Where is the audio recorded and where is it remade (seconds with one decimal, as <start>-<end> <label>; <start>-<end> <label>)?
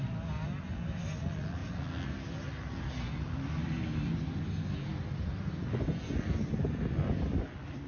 0.0-7.9 recorded